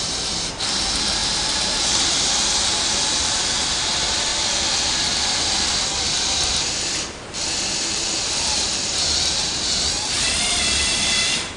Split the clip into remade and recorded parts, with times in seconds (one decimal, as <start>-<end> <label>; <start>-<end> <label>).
0.0-4.3 remade; 4.3-6.1 recorded; 6.1-11.6 remade